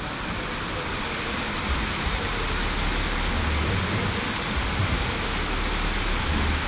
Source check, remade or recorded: recorded